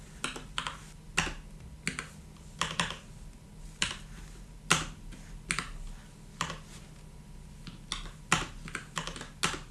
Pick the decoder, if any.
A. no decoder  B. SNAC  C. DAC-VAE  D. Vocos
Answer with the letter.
A